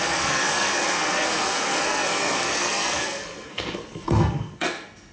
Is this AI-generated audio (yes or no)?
yes